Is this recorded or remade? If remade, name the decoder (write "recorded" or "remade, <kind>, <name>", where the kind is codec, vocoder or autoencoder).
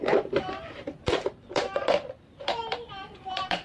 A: remade, vocoder, BigVGAN v2